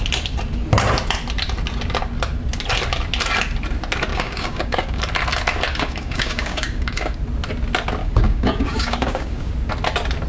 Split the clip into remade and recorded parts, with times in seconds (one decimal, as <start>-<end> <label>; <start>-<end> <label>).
0.0-4.1 recorded; 4.1-5.0 remade; 5.0-5.7 recorded; 5.7-7.2 remade; 7.2-8.0 recorded; 8.0-9.5 remade; 9.5-10.3 recorded